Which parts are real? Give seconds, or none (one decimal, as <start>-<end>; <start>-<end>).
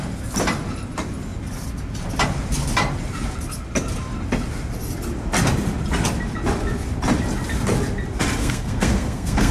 0.0-8.4